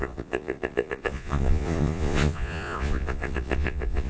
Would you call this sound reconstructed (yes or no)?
yes